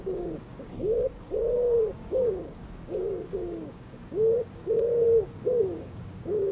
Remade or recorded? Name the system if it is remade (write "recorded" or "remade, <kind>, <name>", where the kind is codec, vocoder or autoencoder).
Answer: remade, codec, DAC